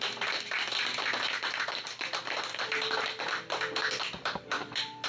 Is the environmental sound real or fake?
real